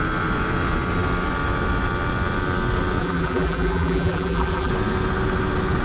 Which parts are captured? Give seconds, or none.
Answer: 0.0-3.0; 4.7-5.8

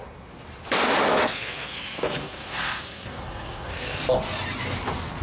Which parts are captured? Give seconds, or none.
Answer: 0.0-1.2; 4.0-5.2

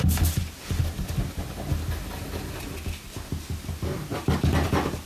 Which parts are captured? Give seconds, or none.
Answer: 0.0-5.1

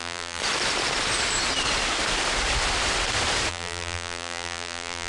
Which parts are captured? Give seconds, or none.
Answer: 0.4-3.5

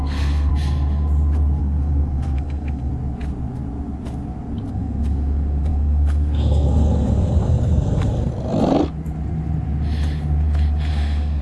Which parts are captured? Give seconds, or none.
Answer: 0.5-1.6; 2.9-4.7; 8.3-10.9

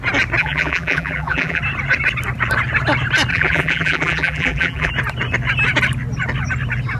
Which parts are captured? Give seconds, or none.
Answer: 0.0-0.4; 1.6-3.3; 4.9-7.0

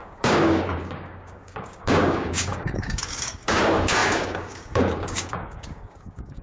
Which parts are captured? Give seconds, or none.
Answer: none